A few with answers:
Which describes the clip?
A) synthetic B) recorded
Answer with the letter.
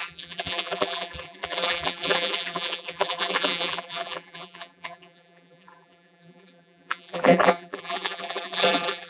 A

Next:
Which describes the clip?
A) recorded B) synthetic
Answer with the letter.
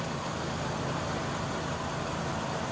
A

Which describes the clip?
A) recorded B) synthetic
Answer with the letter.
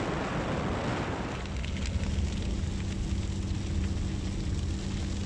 A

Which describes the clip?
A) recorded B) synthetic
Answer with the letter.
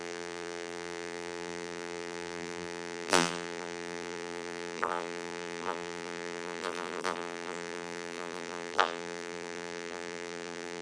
B